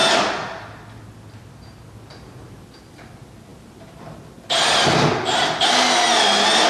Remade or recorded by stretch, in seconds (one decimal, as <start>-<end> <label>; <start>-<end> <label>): 0.0-6.7 recorded